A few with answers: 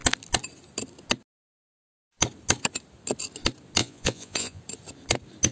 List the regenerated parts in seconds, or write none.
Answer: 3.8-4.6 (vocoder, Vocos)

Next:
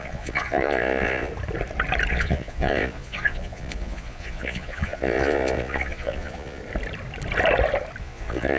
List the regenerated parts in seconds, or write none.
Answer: 0.0-1.3 (vocoder, Vocos); 2.1-6.6; 8.0-8.6

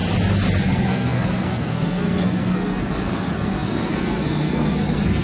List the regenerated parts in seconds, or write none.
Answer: 0.6-5.2 (codec, SNAC)

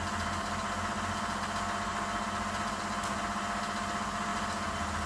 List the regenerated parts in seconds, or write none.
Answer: none

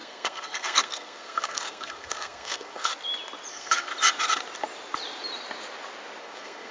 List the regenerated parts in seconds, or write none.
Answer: 0.0-2.9 (codec, SNAC); 3.5-3.9; 6.2-6.7